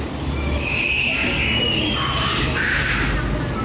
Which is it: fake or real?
real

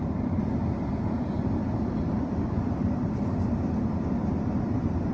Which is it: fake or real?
real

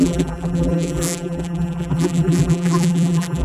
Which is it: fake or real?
fake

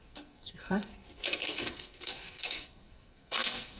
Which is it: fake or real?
fake